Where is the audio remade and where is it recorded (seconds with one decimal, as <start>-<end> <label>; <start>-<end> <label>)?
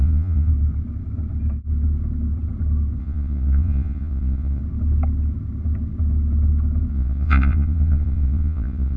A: 0.0-0.5 remade; 0.5-3.0 recorded; 3.0-4.6 remade; 4.6-6.9 recorded; 6.9-9.0 remade